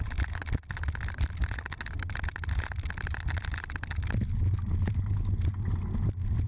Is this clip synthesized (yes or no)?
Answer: no